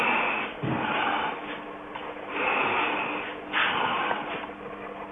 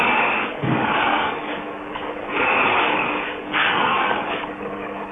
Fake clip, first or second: second